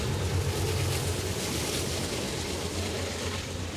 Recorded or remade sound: recorded